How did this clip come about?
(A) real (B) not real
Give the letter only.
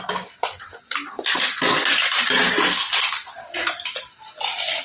A